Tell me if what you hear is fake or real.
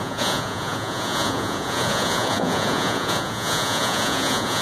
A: fake